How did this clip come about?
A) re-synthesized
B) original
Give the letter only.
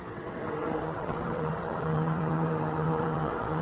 A